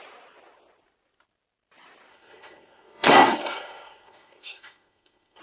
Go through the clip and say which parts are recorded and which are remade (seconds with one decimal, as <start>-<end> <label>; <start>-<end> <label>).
0.0-2.1 recorded; 2.1-5.4 remade